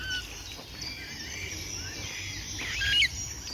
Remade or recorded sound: recorded